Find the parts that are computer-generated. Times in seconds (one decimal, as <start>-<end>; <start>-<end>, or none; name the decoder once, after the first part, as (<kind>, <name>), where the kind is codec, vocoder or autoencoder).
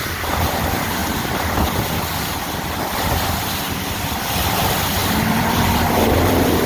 1.0-2.0 (vocoder, BigVGAN v2); 5.0-5.6